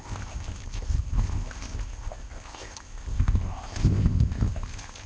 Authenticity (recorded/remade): remade